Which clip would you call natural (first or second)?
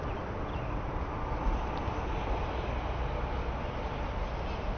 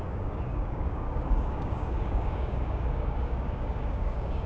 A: first